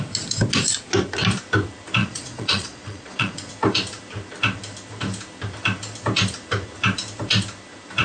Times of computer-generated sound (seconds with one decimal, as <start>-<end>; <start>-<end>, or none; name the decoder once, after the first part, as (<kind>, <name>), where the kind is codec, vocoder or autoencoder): 2.0-3.5 (vocoder, Vocos)